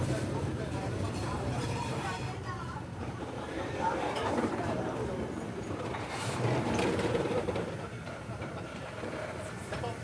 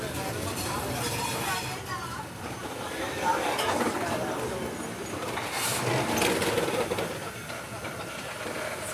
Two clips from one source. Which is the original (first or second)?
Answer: second